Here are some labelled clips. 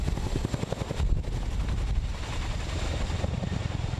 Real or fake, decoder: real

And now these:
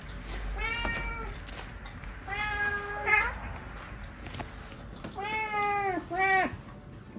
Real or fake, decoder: real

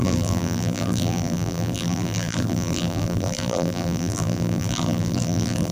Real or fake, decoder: fake, vocoder, BigVGAN v2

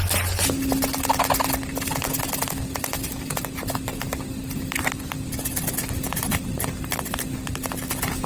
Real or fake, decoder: real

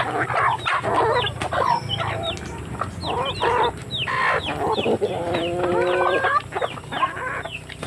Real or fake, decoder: real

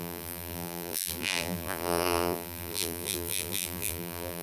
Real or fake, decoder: fake, vocoder, BigVGAN v2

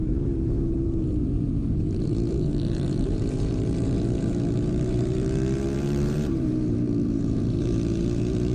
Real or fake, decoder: fake, vocoder, BigVGAN v2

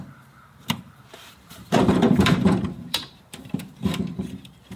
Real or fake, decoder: fake, vocoder, BigVGAN v2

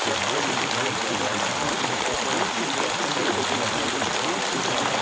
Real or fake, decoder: fake, vocoder, BigVGAN v2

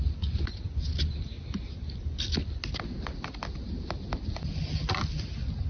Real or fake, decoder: real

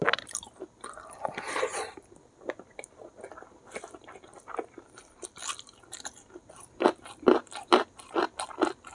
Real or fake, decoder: fake, vocoder, BigVGAN v2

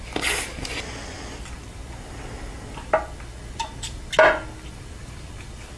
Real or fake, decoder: fake, vocoder, BigVGAN v2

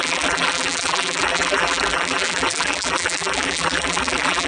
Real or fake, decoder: fake, vocoder, BigVGAN v2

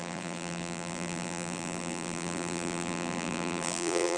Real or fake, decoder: fake, vocoder, BigVGAN v2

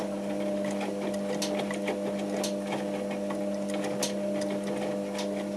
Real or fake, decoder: real